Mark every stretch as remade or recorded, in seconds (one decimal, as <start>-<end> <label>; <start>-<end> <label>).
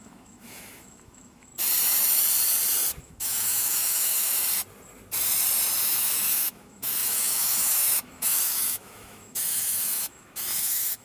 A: 0.0-1.5 remade; 1.5-3.0 recorded; 3.0-4.4 remade; 4.4-5.8 recorded; 5.8-11.0 remade